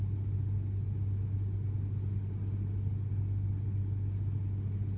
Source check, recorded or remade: recorded